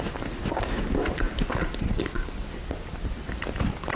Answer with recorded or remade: recorded